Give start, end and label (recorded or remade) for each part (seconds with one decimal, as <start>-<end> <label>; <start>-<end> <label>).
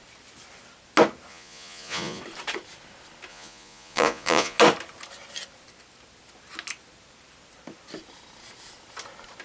0.0-1.3 recorded; 1.3-2.2 remade; 2.2-3.3 recorded; 3.3-4.6 remade; 4.6-9.4 recorded